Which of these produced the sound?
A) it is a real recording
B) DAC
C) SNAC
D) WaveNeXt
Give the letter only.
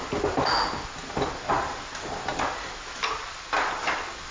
A